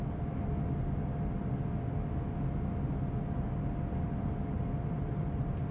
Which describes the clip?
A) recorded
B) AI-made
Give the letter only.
A